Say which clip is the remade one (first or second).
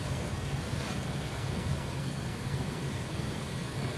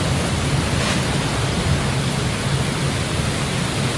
first